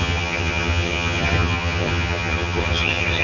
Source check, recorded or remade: remade